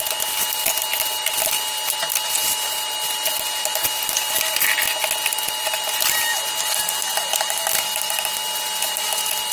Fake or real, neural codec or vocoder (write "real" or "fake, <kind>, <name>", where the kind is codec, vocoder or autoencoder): real